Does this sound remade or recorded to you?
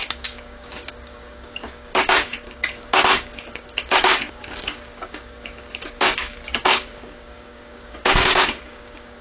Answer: remade